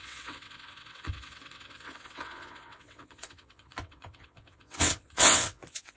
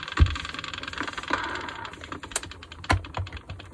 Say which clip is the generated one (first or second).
first